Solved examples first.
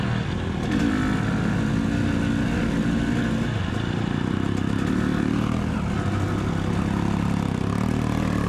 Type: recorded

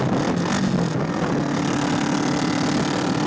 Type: recorded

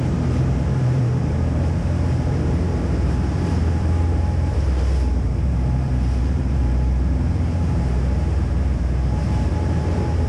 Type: remade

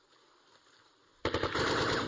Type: recorded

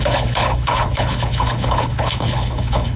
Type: remade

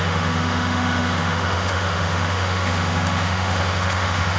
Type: remade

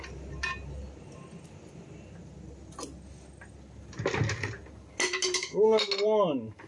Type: recorded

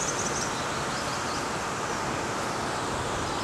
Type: recorded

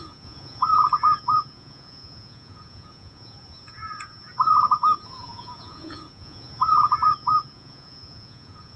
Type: remade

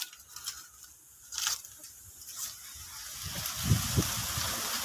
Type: recorded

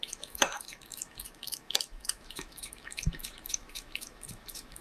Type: remade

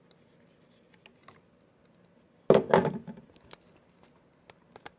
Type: recorded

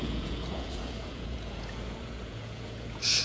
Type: remade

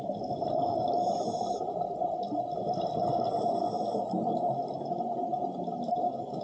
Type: recorded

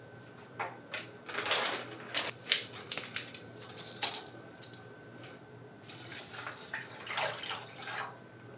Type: remade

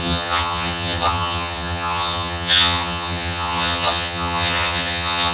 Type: remade